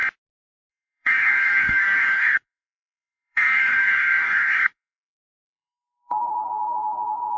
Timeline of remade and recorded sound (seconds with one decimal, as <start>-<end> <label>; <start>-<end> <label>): 0.0-0.7 recorded; 0.7-7.4 remade